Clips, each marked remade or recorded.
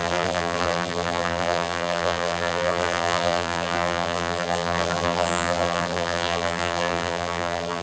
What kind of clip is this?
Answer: remade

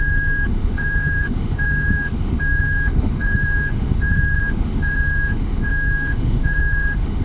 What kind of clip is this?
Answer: remade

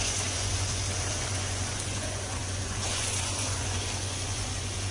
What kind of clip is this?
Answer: remade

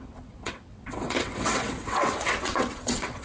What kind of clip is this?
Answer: remade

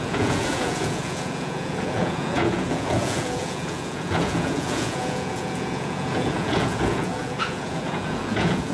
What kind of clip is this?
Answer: remade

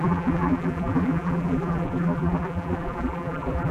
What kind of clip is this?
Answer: remade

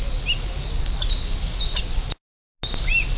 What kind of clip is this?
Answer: recorded